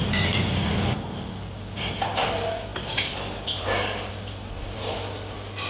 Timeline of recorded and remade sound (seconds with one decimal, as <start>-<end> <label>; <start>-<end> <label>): 0.0-5.7 recorded